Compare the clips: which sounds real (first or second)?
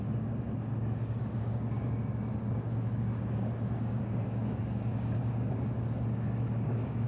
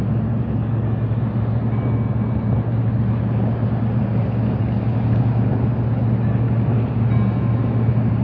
second